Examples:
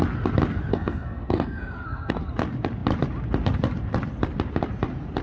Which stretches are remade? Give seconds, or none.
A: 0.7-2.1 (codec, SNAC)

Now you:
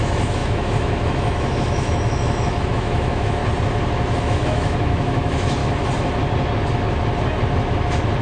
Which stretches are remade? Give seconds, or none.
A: 0.0-3.4 (autoencoder, DAC-VAE); 4.2-5.6

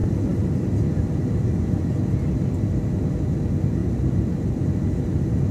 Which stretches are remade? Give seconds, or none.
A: 0.0-1.5 (vocoder, BigVGAN v2); 3.8-4.6